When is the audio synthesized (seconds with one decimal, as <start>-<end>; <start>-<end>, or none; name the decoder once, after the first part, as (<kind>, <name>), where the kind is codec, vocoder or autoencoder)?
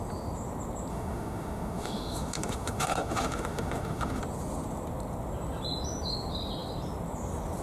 0.9-4.2 (autoencoder, DAC-VAE)